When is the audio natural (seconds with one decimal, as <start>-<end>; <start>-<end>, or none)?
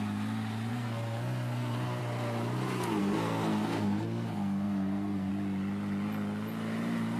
0.0-0.7; 2.0-3.0; 5.3-7.2